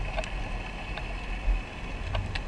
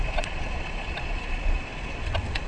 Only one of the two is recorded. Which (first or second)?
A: first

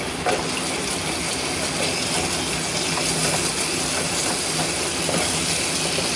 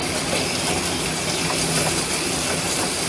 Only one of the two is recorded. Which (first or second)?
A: first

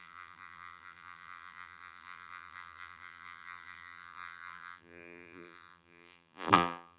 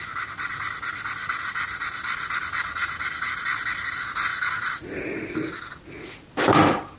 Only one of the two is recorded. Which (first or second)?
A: second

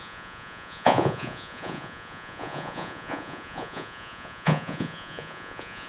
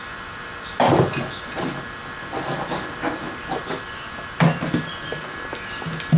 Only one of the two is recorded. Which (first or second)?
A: second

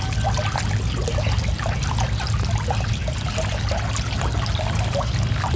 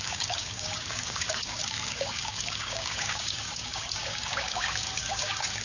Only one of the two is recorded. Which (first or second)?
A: first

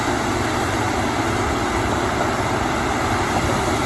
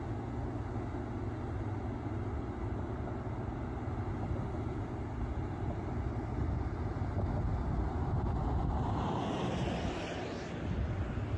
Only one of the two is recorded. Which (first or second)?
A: second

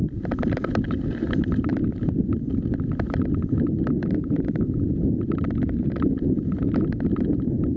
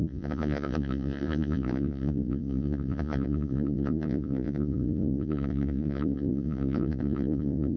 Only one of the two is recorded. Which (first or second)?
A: first